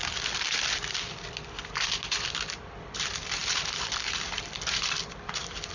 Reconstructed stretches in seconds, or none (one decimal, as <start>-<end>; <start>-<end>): none